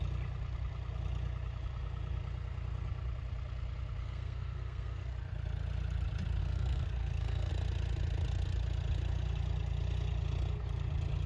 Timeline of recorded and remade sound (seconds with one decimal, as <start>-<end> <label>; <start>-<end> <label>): 0.0-4.0 recorded; 4.0-5.1 remade; 5.1-6.4 recorded; 6.4-7.5 remade; 7.5-11.3 recorded